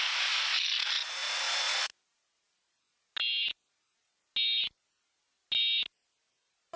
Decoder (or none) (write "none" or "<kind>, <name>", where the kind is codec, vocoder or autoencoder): none